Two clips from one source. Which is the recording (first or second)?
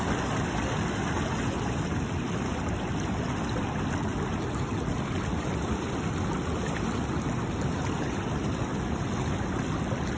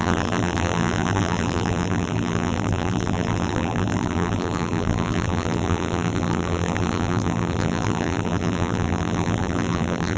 first